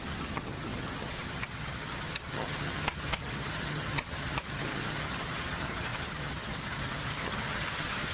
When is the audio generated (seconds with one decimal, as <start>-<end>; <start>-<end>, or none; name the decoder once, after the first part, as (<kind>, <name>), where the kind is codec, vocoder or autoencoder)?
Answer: 0.0-8.1 (vocoder, HiFi-GAN)